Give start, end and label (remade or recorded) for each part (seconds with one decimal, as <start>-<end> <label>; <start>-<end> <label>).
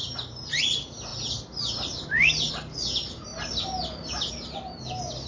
0.0-5.3 recorded